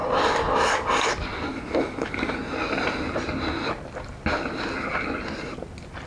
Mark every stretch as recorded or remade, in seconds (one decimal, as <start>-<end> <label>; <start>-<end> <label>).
0.0-1.5 recorded; 1.5-2.4 remade; 2.4-6.1 recorded